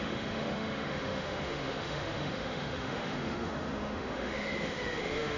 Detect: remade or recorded remade